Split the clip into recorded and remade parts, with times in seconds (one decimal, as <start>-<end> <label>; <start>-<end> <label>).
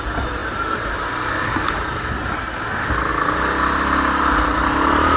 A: 0.0-5.2 recorded